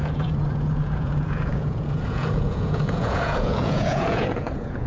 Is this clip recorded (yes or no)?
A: no